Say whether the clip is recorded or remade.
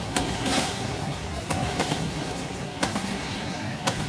remade